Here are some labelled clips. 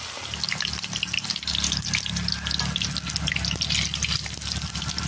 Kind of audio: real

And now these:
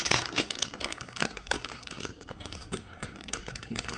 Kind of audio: fake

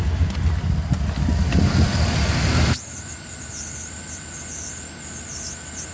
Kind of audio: real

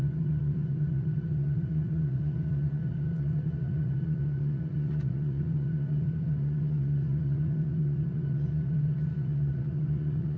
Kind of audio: fake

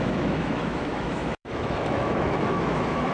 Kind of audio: fake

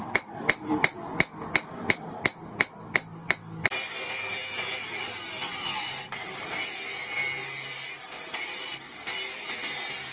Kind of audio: real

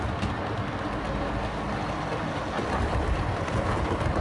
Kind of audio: real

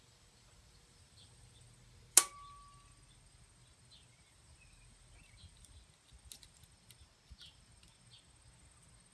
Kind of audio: real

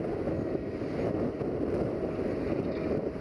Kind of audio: real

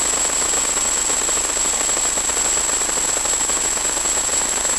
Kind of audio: real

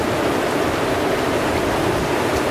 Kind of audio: real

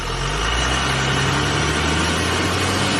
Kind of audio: real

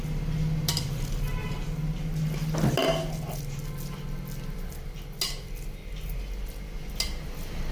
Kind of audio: real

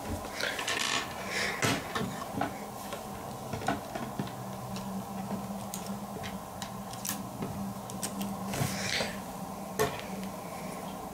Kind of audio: real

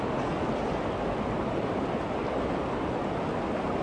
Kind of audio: real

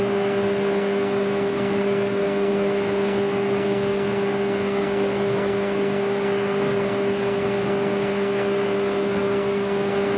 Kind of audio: fake